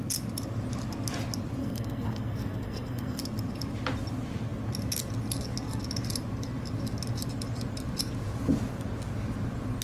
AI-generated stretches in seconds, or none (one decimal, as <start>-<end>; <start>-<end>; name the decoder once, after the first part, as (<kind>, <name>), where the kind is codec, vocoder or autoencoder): 1.6-3.2 (codec, SNAC)